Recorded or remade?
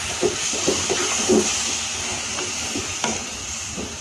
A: remade